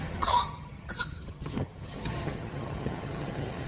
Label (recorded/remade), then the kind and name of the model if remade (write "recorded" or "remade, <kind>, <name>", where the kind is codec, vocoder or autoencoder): remade, vocoder, HiFi-GAN